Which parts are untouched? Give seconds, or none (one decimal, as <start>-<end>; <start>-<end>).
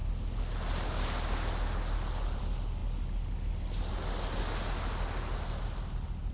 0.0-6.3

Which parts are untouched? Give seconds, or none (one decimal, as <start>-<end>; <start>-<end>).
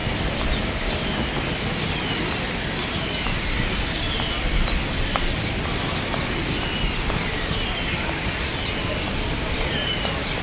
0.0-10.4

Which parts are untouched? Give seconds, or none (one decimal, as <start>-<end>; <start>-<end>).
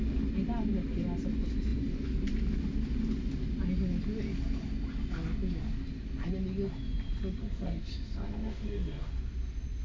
0.0-7.4; 9.1-9.8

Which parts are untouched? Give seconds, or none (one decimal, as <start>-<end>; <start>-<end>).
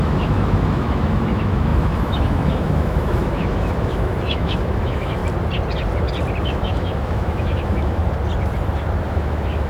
5.2-6.4; 8.0-9.1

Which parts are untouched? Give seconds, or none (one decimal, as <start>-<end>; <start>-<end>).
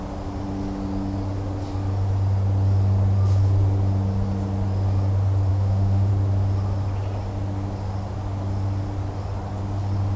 0.0-5.5; 6.1-10.2